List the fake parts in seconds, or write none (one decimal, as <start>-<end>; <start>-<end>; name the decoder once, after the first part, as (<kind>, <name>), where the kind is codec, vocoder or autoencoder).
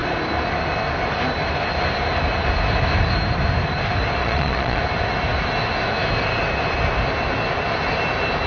4.2-4.8 (vocoder, Vocos)